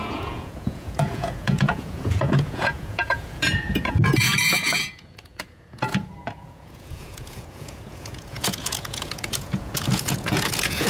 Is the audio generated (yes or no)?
yes